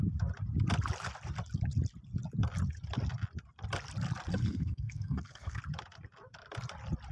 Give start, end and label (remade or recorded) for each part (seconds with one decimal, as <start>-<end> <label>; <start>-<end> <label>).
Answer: 0.0-4.3 recorded; 4.3-5.6 remade; 5.6-7.1 recorded